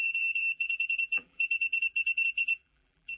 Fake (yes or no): yes